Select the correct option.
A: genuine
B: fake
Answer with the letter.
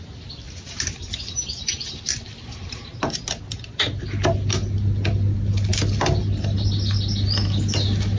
A